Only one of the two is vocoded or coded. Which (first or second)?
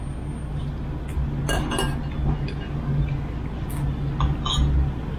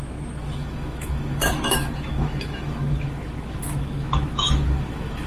second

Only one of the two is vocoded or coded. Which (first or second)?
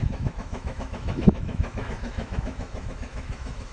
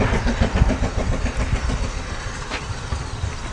first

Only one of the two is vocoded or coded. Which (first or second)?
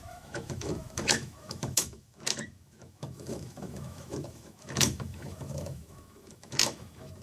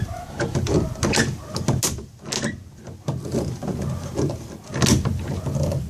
first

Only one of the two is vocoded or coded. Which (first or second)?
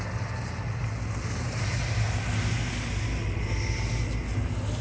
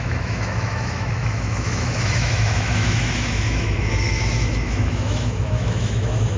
second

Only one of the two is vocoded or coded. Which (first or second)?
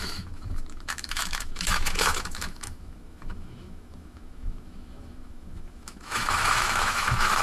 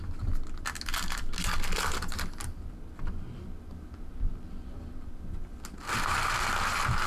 first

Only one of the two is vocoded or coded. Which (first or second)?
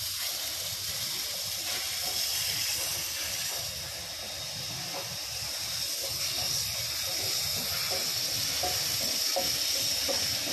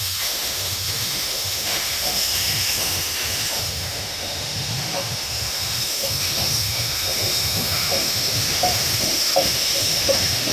second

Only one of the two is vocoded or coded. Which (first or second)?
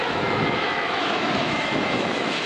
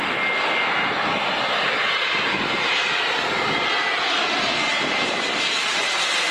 first